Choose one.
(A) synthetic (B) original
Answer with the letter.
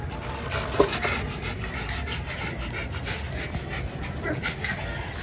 B